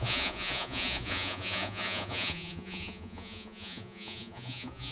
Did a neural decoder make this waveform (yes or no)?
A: yes